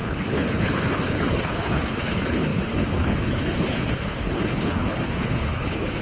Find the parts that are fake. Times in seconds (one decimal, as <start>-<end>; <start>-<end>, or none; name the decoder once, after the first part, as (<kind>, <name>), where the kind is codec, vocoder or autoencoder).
0.0-6.0 (codec, HILCodec)